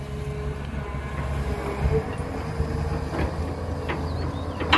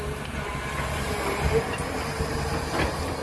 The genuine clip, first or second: first